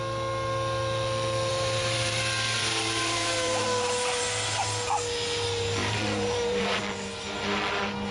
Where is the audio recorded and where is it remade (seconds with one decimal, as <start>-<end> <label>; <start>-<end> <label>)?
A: 0.0-1.5 recorded; 1.5-4.2 remade; 4.2-5.8 recorded; 5.8-6.8 remade; 6.8-8.1 recorded

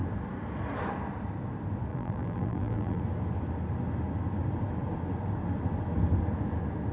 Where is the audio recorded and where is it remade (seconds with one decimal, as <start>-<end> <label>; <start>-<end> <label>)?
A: 0.0-1.9 recorded; 1.9-3.0 remade; 3.0-6.9 recorded

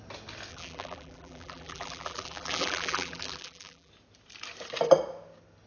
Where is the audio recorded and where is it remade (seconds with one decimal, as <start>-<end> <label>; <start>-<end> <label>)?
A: 0.0-0.5 recorded; 0.5-3.9 remade; 3.9-5.7 recorded

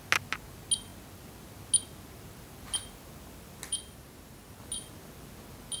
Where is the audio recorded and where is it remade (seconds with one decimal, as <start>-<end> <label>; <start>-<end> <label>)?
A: 0.0-3.7 recorded; 3.7-4.6 remade; 4.6-5.8 recorded

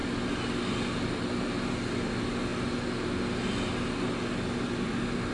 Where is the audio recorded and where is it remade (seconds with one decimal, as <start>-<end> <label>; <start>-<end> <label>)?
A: 0.0-5.3 recorded

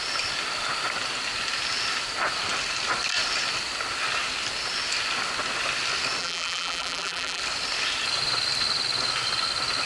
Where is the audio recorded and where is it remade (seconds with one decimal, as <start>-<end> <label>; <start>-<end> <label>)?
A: 0.0-6.2 recorded; 6.2-7.4 remade; 7.4-9.9 recorded